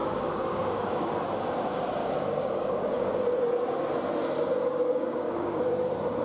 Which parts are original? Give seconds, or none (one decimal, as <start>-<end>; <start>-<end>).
1.1-2.0; 3.1-4.9; 5.6-6.2